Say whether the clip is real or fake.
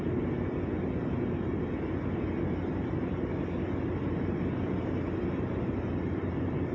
real